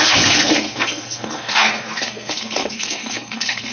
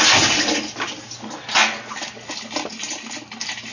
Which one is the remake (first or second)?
first